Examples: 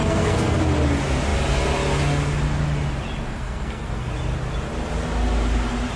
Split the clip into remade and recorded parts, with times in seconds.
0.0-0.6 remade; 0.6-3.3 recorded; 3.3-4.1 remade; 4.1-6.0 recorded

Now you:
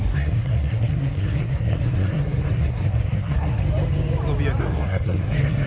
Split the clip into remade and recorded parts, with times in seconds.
0.0-3.6 remade; 3.6-4.6 recorded; 4.6-5.7 remade

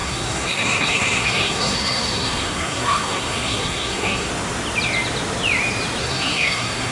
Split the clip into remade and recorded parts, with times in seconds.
0.0-4.3 remade; 4.3-6.0 recorded; 6.0-6.9 remade

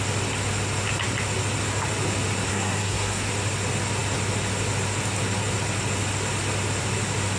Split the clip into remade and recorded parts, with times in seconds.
0.0-2.5 recorded; 2.5-3.3 remade; 3.3-7.4 recorded

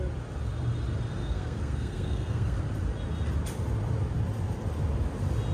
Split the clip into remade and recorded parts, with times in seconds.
0.0-1.2 recorded; 1.2-2.6 remade; 2.6-5.5 recorded

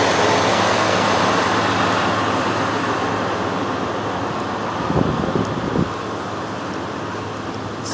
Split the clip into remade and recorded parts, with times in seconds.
0.0-0.5 recorded; 0.5-1.1 remade; 1.1-7.9 recorded

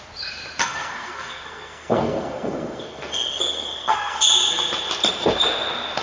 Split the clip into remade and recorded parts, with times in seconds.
0.0-0.6 recorded; 0.6-4.2 remade; 4.2-6.0 recorded

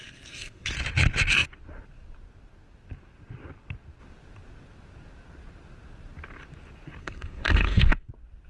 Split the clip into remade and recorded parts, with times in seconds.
0.0-0.7 remade; 0.7-7.0 recorded; 7.0-8.1 remade; 8.1-8.5 recorded